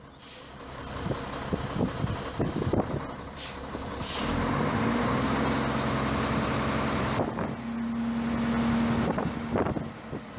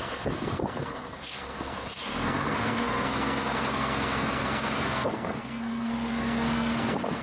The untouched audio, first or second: first